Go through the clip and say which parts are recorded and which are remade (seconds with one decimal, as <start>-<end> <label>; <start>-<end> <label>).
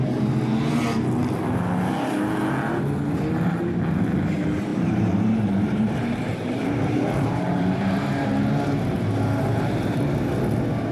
0.0-4.7 recorded; 4.7-8.5 remade; 8.5-10.9 recorded